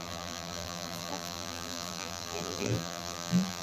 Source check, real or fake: fake